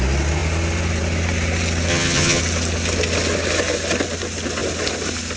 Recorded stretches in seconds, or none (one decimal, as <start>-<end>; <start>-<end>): 0.0-1.9; 2.4-5.4